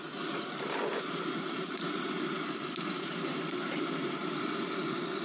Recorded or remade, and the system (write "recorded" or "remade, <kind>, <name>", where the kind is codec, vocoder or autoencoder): remade, vocoder, BigVGAN v2